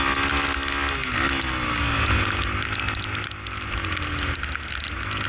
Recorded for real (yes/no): yes